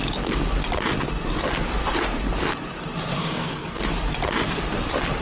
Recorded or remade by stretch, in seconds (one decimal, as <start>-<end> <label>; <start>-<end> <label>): 0.0-3.2 recorded; 3.2-3.9 remade; 3.9-5.2 recorded